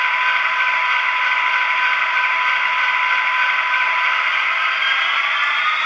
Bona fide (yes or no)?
no